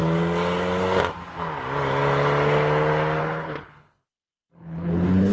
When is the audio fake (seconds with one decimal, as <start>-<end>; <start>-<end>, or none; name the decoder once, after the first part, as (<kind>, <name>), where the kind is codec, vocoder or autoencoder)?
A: 3.2-5.3 (codec, HILCodec)